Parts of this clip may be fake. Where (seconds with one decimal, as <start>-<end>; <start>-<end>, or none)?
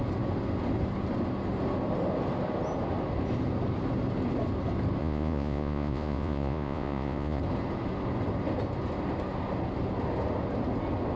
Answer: 5.0-7.4